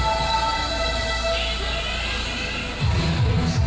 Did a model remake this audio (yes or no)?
no